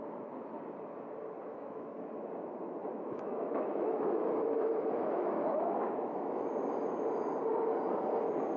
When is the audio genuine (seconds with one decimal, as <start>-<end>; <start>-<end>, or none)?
0.0-1.5; 2.1-2.8; 6.5-8.6